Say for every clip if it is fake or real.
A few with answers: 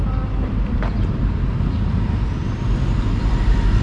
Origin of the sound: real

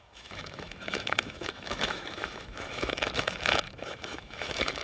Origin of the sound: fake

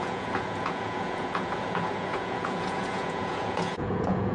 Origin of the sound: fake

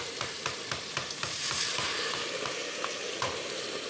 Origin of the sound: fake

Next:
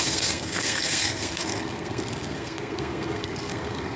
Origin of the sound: fake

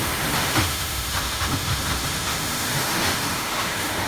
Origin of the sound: fake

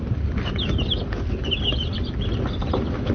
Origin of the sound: real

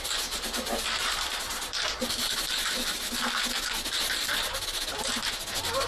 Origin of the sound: real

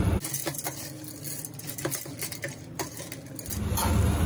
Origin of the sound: real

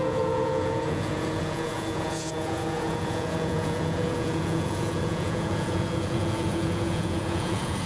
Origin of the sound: fake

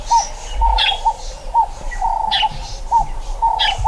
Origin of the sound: real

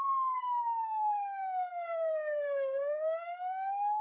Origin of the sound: fake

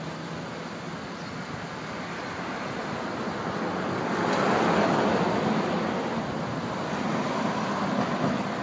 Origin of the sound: real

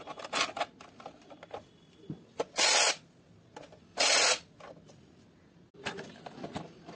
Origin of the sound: real